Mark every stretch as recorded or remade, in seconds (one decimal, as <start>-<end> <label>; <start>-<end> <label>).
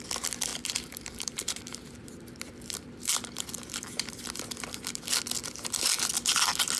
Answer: 0.0-0.5 recorded; 0.5-1.6 remade; 1.6-2.0 recorded; 2.0-5.2 remade; 5.2-6.8 recorded